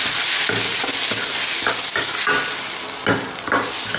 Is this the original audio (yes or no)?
yes